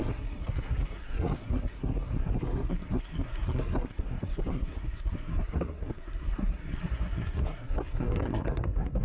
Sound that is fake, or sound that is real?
fake